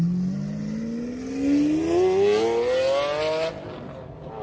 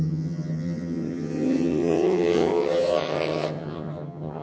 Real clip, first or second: first